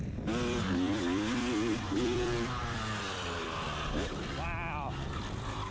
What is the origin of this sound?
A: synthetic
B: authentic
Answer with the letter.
A